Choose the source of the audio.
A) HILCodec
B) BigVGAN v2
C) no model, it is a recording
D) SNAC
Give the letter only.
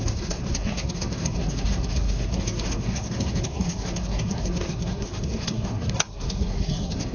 D